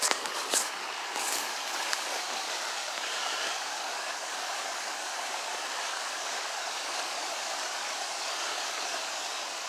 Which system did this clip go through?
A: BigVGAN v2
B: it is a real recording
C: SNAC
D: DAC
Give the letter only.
D